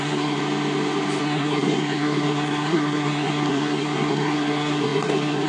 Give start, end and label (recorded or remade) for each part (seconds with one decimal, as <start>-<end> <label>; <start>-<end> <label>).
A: 0.0-0.4 remade; 0.4-1.2 recorded; 1.2-5.5 remade